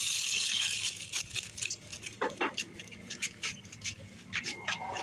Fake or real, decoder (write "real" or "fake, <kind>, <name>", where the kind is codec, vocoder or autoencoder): fake, codec, DAC